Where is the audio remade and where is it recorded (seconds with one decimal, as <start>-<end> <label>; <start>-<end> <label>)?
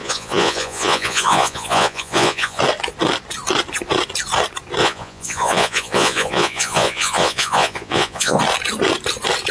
0.0-2.6 remade; 2.6-4.8 recorded; 4.8-8.4 remade; 8.4-9.5 recorded